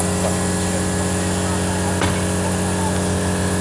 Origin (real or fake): real